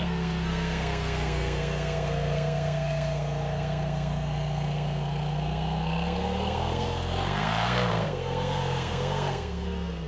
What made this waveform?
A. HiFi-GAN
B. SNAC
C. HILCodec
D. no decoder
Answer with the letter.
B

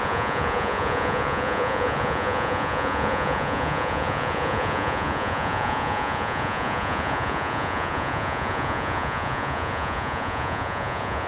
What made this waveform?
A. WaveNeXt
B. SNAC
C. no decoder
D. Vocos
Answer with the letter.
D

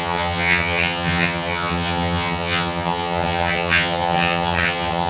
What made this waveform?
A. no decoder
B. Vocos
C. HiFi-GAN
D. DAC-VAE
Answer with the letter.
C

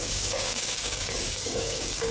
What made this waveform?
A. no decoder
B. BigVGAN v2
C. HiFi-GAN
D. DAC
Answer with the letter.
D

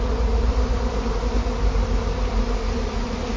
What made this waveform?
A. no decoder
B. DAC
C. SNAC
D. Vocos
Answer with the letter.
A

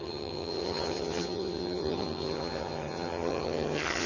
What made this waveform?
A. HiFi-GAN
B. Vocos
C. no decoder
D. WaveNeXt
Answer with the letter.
A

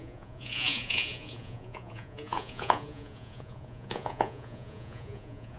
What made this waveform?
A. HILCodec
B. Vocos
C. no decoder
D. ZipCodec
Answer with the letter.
B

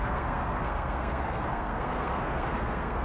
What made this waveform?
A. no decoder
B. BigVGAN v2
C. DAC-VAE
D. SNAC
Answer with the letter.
D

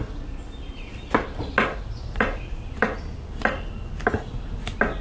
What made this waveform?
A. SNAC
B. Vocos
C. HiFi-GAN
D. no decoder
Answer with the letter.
D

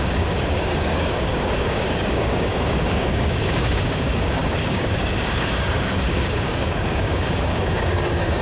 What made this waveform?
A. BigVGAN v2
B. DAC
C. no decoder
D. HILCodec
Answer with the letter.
B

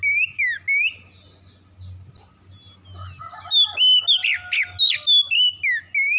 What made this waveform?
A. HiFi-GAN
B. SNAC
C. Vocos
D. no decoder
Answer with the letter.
D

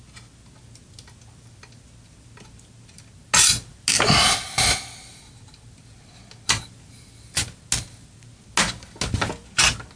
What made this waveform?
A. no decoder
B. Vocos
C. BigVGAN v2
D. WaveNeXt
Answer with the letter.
A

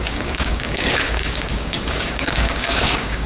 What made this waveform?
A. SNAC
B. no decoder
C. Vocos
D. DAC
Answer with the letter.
D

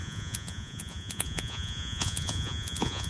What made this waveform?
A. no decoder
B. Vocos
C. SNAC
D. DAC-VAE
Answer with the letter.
B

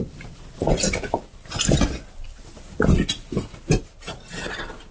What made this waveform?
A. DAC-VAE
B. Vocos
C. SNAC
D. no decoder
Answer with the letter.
D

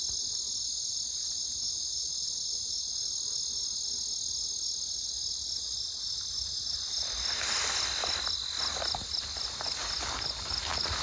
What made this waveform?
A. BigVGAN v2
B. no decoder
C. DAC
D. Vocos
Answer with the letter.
B